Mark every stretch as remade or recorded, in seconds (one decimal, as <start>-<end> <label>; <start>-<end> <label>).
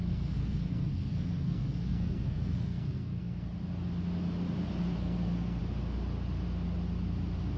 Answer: 0.0-3.5 remade; 3.5-5.0 recorded; 5.0-5.6 remade; 5.6-7.6 recorded